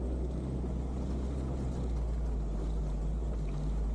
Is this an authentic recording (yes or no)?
yes